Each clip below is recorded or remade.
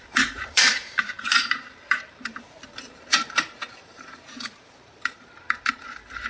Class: remade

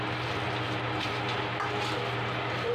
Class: remade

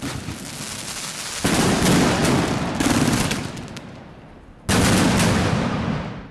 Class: recorded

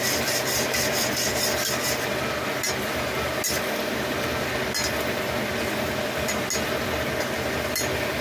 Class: recorded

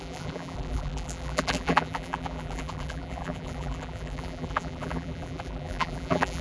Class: remade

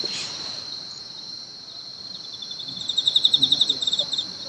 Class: remade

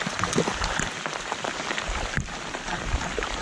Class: remade